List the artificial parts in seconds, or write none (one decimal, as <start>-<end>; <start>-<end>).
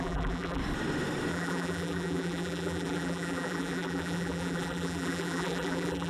0.0-0.6; 1.3-6.1